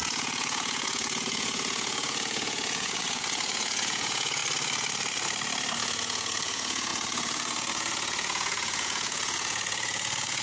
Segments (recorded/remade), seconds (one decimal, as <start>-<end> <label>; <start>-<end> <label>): 0.0-4.4 remade; 4.4-5.8 recorded; 5.8-10.4 remade